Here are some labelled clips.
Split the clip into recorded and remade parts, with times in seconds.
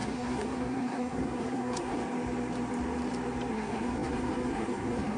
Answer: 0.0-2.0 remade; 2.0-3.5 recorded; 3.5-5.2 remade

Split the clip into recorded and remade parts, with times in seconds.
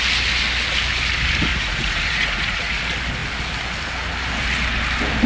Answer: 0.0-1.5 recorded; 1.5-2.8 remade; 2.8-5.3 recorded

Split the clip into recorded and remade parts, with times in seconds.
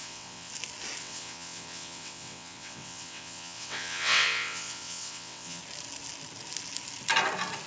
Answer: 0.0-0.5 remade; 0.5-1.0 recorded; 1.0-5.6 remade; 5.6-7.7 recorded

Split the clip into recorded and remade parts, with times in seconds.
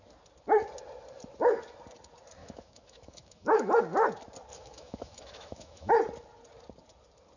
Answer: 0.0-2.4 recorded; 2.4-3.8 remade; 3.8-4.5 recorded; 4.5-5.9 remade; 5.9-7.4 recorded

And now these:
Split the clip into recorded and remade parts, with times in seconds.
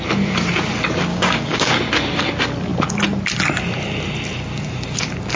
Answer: 0.0-1.1 recorded; 1.1-1.7 remade; 1.7-5.4 recorded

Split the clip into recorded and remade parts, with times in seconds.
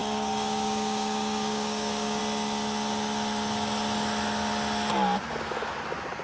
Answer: 0.0-2.2 remade; 2.2-6.2 recorded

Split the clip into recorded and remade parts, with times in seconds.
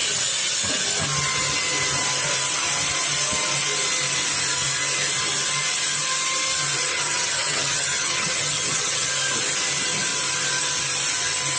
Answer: 0.0-6.9 recorded; 6.9-9.1 remade; 9.1-11.6 recorded